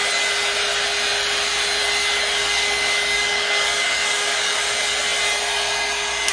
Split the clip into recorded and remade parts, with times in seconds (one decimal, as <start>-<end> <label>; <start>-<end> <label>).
0.0-2.4 recorded; 2.4-4.6 remade; 4.6-6.3 recorded